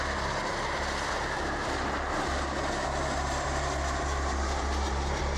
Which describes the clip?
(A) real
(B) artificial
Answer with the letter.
A